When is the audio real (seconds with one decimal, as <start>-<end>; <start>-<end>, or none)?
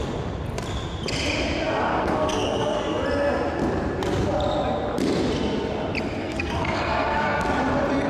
0.0-1.9; 2.8-6.2; 7.4-8.1